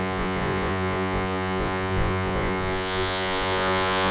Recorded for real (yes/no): no